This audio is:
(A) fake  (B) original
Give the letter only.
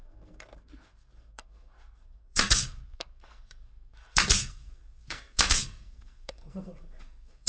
A